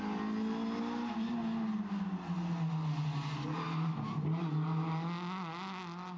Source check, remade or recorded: recorded